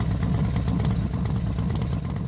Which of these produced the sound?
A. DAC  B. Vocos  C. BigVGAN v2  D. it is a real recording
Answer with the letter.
C